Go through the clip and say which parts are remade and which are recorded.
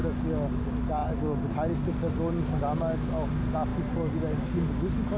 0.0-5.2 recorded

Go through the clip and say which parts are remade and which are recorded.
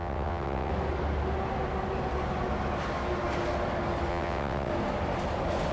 0.0-0.7 remade; 0.7-4.1 recorded; 4.1-4.7 remade; 4.7-5.7 recorded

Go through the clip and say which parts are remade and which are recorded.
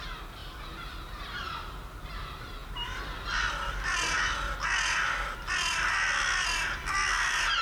0.0-7.6 recorded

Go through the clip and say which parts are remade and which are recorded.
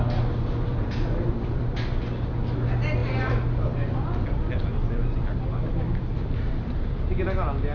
0.0-7.7 recorded